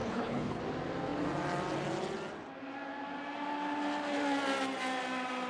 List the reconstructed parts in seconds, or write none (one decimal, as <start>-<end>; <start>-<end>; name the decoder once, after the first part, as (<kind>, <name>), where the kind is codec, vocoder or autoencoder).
0.0-0.6 (codec, HILCodec)

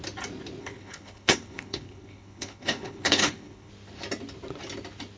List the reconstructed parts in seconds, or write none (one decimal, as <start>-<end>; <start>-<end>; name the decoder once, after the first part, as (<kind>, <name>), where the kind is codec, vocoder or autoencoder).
0.6-3.7 (codec, HILCodec)

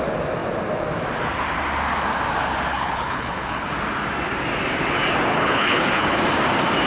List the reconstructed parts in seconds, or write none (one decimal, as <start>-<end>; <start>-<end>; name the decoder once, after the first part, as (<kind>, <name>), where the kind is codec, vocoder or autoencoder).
2.7-3.7 (codec, HILCodec); 5.3-6.2

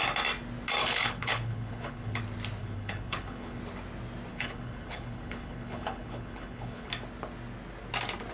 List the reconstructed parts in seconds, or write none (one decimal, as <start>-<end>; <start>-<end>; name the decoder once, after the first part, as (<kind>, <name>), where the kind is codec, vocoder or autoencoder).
0.8-2.2 (codec, HILCodec); 2.6-3.6; 4.3-6.9

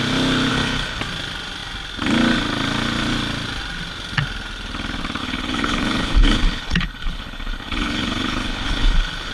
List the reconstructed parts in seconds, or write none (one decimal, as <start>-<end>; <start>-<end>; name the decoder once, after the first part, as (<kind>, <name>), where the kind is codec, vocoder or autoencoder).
0.5-1.0 (codec, HILCodec); 5.2-9.3

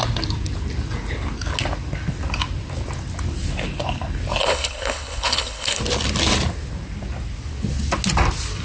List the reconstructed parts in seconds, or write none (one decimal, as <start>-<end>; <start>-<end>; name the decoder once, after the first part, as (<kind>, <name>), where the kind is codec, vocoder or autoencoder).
4.4-5.8 (codec, HILCodec)

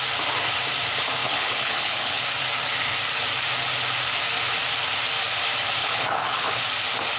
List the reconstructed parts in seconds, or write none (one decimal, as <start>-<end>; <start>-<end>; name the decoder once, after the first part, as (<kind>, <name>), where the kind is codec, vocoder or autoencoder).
1.2-2.2 (codec, HILCodec); 5.8-6.6

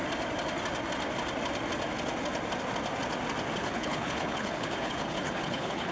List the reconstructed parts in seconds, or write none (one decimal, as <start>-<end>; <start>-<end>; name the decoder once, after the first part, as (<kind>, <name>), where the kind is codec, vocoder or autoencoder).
3.6-5.9 (codec, HILCodec)